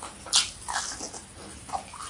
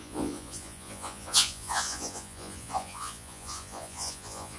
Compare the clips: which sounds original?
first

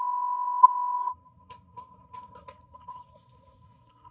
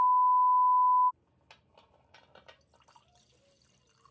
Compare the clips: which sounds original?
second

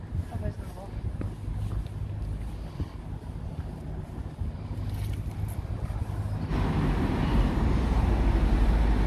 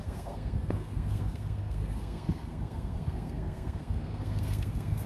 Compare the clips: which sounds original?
first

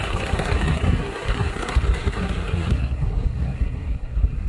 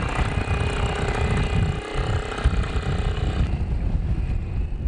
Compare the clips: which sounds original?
second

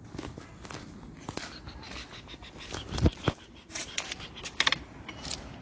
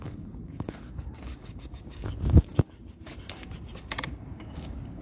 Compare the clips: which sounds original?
first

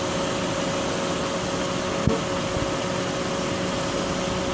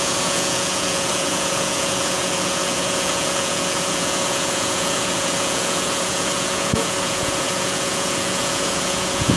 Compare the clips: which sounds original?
first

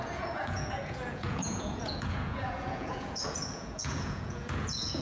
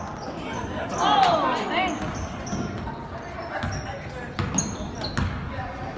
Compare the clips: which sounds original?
second